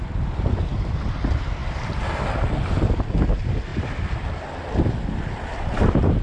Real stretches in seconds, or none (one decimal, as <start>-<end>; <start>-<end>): 0.0-6.2